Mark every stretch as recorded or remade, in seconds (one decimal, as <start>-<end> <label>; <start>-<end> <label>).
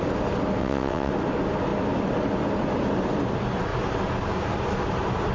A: 0.0-0.6 recorded; 0.6-1.1 remade; 1.1-5.3 recorded